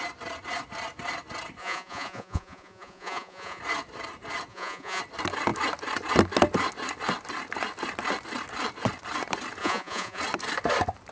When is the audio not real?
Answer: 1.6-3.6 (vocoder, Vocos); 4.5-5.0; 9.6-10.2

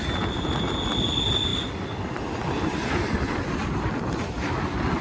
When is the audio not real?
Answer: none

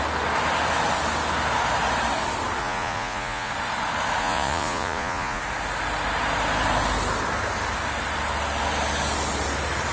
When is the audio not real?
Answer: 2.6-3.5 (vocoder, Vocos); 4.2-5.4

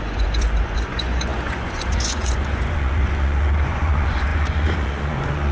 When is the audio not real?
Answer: 0.0-5.5 (vocoder, Vocos)

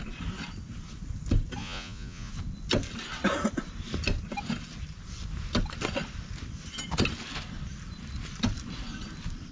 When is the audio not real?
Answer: 1.6-2.3 (vocoder, Vocos)

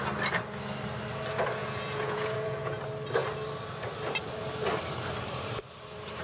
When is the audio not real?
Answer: 1.6-2.8 (vocoder, Vocos)

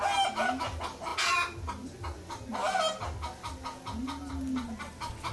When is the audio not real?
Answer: none